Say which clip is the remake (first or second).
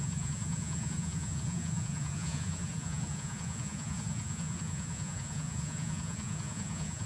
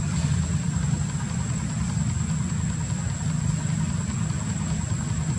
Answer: first